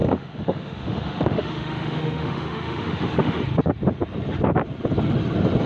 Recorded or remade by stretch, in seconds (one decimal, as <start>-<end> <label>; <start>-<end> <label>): 0.0-3.4 remade; 3.4-5.7 recorded